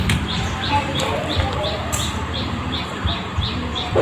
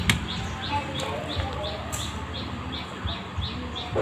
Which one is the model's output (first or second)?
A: first